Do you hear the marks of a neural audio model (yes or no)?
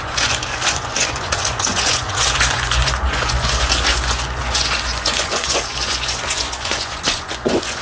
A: yes